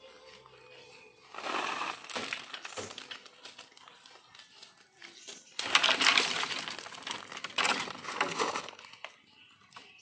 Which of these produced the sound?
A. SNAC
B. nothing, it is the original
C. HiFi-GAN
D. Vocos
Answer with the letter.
B